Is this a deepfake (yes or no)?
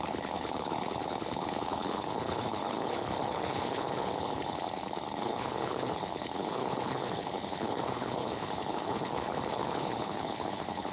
yes